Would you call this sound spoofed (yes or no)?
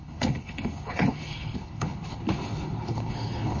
yes